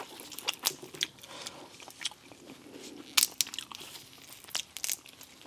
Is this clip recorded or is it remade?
recorded